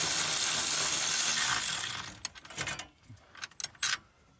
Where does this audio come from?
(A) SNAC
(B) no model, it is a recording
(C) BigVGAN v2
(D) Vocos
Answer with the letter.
B